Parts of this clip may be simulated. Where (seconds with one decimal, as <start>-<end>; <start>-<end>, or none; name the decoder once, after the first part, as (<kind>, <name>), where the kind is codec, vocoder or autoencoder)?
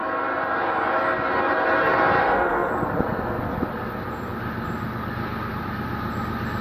2.2-2.7 (autoencoder, DAC-VAE)